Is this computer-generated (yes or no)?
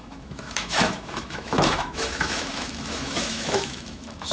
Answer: yes